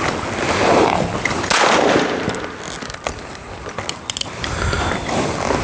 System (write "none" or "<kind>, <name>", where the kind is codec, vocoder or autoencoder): none